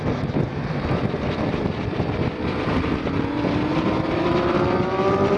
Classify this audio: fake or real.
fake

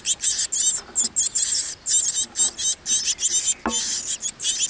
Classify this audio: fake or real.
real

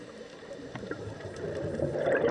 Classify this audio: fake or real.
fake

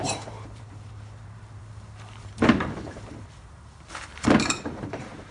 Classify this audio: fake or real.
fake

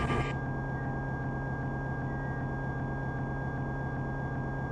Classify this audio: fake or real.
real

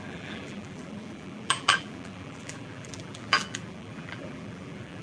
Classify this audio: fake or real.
fake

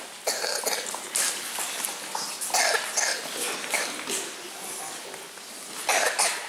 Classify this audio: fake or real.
real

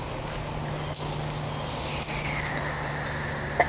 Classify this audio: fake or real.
real